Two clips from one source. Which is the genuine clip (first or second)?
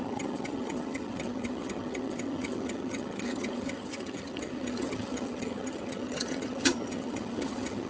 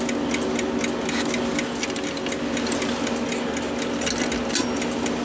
second